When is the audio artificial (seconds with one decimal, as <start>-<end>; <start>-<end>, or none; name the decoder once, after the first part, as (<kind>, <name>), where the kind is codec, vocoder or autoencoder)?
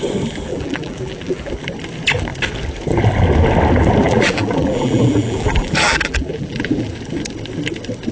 0.5-1.5 (vocoder, BigVGAN v2); 4.0-6.9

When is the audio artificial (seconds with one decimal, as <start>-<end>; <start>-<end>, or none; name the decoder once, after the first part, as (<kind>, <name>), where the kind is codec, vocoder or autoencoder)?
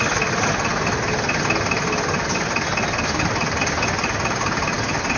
none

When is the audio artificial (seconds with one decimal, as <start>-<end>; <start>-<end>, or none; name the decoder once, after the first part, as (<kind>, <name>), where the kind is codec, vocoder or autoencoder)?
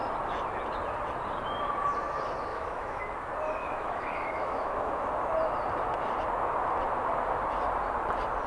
2.5-3.0 (autoencoder, DAC-VAE); 3.6-5.1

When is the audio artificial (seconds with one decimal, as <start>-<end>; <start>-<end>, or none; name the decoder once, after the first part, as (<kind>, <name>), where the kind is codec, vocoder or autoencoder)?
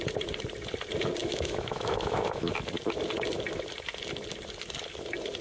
1.2-2.5 (autoencoder, DAC-VAE)